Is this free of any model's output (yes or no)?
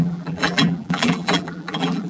no